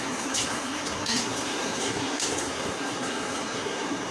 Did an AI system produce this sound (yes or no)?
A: yes